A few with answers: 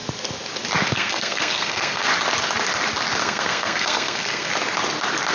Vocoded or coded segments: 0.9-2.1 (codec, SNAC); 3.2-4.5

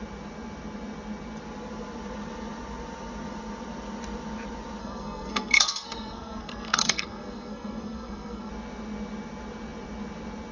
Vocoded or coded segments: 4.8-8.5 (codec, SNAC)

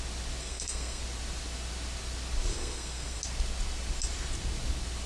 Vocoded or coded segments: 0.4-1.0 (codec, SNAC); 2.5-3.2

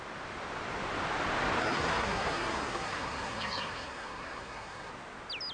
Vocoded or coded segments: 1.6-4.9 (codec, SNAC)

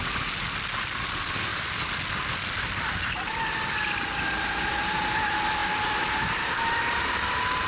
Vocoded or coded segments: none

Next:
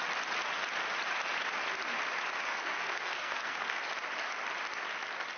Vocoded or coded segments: 2.5-3.7 (codec, SNAC)